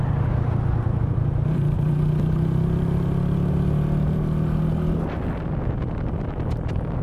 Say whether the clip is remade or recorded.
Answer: recorded